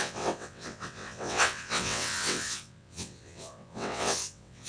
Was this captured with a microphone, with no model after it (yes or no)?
no